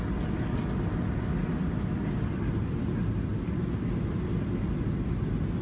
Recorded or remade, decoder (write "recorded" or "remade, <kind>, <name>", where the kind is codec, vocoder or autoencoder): recorded